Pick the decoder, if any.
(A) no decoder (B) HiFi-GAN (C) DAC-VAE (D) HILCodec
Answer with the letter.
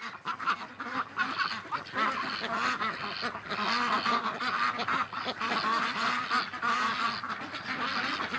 A